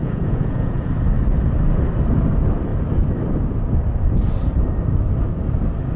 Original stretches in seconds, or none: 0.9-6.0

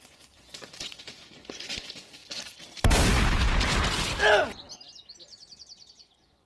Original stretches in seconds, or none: 2.2-5.9